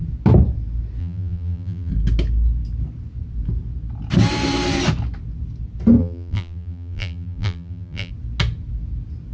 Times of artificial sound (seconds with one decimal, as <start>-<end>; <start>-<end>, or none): 1.0-1.9; 6.0-8.1